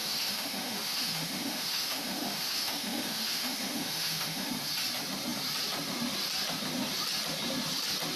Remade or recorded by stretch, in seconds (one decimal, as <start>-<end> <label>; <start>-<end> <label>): 0.0-4.5 remade; 4.5-8.2 recorded